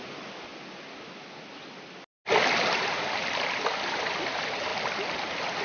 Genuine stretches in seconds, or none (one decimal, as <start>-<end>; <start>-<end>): 0.5-3.9; 4.7-5.6